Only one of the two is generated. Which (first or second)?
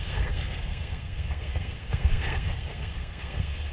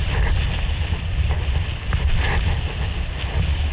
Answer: first